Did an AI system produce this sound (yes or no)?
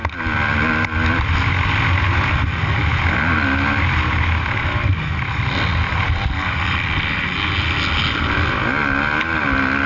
no